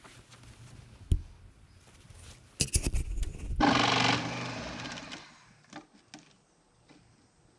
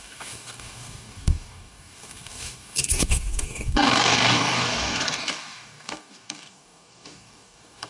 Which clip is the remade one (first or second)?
second